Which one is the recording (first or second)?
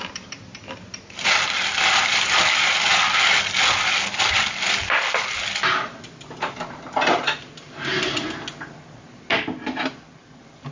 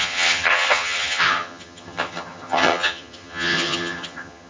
first